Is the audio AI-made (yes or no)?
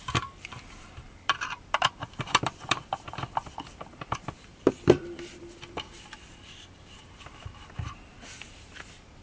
yes